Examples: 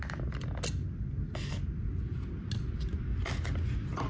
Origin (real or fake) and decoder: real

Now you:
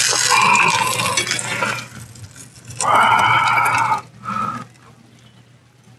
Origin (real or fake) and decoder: real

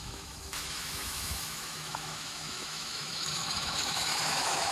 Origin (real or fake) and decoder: fake, autoencoder, DAC-VAE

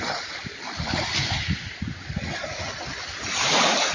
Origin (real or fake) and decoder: real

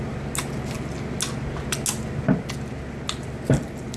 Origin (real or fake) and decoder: real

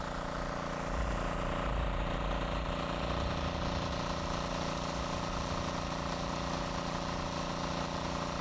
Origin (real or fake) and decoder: real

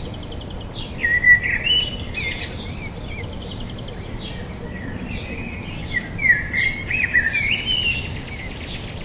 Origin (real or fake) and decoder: real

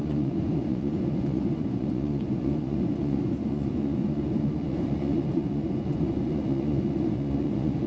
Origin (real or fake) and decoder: fake, vocoder, Vocos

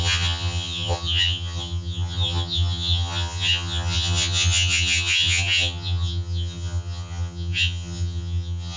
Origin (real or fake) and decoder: fake, vocoder, HiFi-GAN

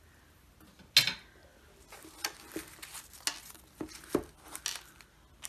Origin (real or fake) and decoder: real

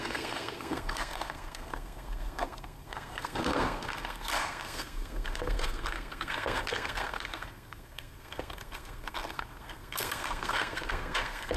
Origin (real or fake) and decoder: fake, codec, SNAC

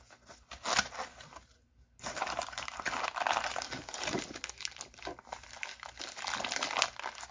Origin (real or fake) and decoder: real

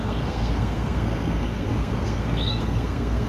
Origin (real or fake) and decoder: fake, codec, SNAC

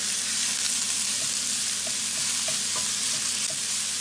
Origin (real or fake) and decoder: real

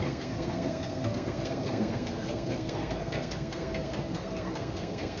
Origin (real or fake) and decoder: fake, codec, SNAC